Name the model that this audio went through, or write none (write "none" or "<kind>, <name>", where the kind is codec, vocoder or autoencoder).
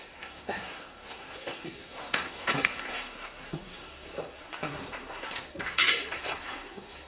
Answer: codec, SNAC